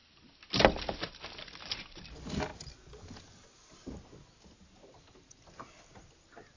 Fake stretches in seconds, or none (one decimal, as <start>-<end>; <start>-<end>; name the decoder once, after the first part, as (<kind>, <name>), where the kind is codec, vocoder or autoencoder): none